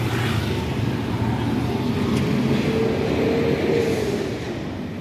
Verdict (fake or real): real